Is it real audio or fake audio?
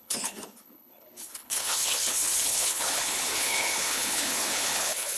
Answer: fake